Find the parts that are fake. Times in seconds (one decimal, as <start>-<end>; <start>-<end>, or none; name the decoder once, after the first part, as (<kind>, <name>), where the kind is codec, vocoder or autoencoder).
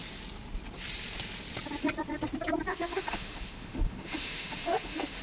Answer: 2.7-5.2 (autoencoder, DAC-VAE)